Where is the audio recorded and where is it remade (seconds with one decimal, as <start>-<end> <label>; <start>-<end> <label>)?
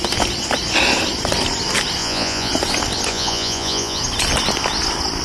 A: 0.0-2.0 recorded; 2.0-2.5 remade; 2.5-3.1 recorded; 3.1-4.0 remade; 4.0-5.2 recorded